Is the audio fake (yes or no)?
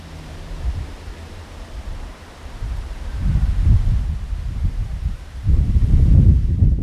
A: yes